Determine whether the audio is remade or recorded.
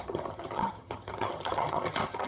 remade